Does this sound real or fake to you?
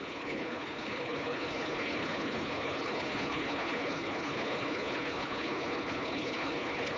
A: fake